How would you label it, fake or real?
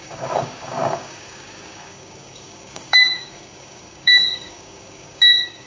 fake